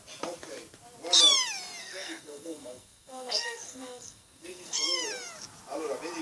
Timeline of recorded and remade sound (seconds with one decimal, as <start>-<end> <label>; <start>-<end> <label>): 0.0-1.8 recorded; 1.8-5.0 remade; 5.0-6.2 recorded